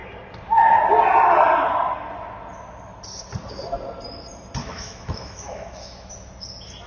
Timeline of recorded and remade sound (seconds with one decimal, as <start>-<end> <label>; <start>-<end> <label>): 0.0-4.6 recorded; 4.6-6.1 remade; 6.1-6.9 recorded